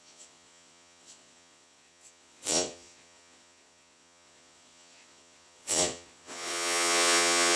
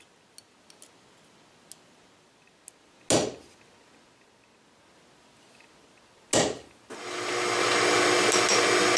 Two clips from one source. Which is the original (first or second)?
second